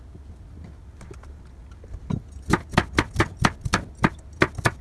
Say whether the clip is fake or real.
real